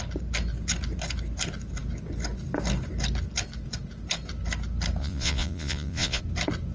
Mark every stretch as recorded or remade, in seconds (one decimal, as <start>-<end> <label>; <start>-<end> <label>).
0.0-5.0 recorded; 5.0-6.2 remade; 6.2-6.7 recorded